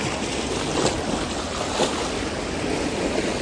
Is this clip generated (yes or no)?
no